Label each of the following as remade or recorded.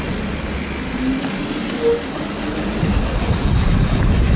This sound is recorded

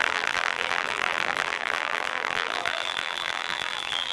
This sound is remade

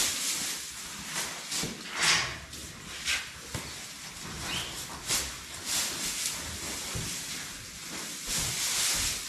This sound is recorded